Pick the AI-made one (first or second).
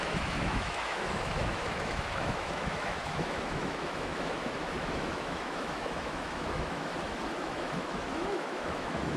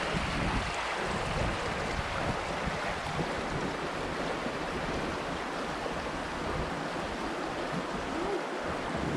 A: first